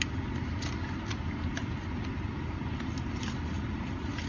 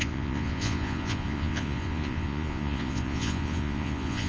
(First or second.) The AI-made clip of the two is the second